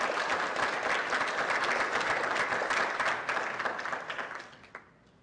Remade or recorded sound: recorded